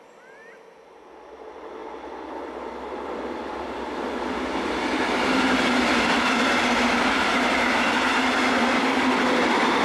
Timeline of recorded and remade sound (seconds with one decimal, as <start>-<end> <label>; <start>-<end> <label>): 0.0-9.8 remade

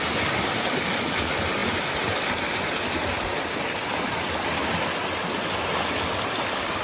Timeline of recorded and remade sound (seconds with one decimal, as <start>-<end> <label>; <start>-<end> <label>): 0.0-6.8 recorded

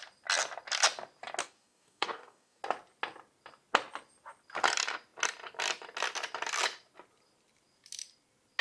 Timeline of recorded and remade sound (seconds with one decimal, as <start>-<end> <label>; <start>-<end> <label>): 0.0-1.4 recorded; 1.4-2.6 remade; 2.6-8.6 recorded